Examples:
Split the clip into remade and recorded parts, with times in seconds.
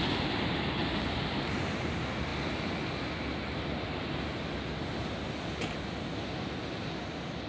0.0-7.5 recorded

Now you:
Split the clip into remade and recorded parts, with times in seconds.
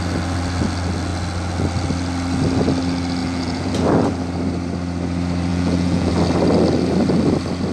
0.0-3.2 recorded; 3.2-3.7 remade; 3.7-5.5 recorded; 5.5-6.1 remade; 6.1-7.7 recorded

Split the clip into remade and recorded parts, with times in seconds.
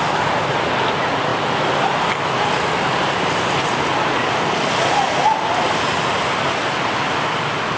0.0-7.8 recorded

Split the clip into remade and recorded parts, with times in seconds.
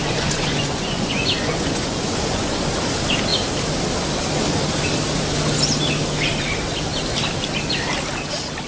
0.0-2.7 remade; 2.7-8.7 recorded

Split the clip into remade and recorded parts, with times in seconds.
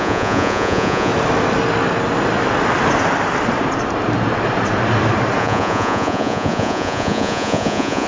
0.0-1.1 remade; 1.1-5.4 recorded; 5.4-8.1 remade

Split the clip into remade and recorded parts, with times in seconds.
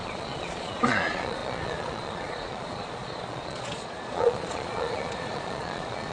0.0-6.1 remade